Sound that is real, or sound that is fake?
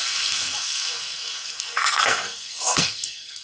fake